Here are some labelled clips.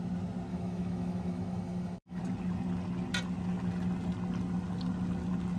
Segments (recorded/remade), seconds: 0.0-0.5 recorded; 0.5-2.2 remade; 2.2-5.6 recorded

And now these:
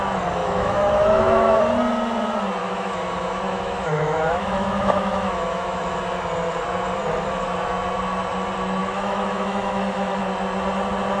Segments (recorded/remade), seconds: 0.0-0.4 recorded; 0.4-1.6 remade; 1.6-2.6 recorded; 2.6-6.0 remade; 6.0-8.8 recorded; 8.8-10.2 remade; 10.2-11.2 recorded

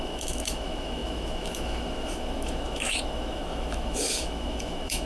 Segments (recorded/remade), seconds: 0.0-5.1 remade

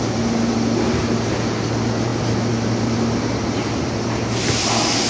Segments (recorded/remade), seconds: 0.0-5.1 recorded

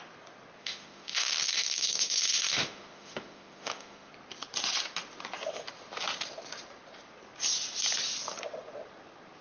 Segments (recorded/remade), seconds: 0.0-0.6 recorded; 0.6-4.1 remade; 4.1-9.4 recorded

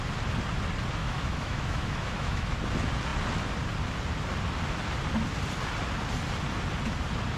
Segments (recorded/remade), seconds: 0.0-1.0 recorded; 1.0-2.6 remade; 2.6-7.4 recorded